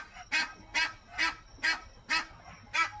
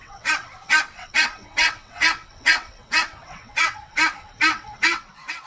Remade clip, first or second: second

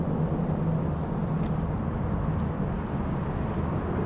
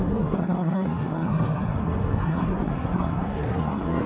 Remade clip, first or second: second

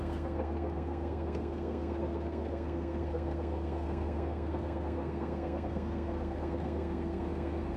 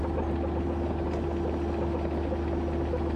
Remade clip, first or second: first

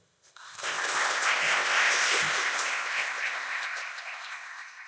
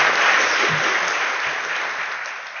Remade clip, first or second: first